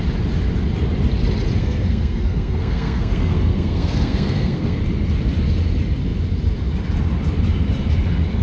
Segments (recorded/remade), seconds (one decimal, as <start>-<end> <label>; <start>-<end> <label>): 0.0-1.6 recorded; 1.6-4.8 remade; 4.8-8.4 recorded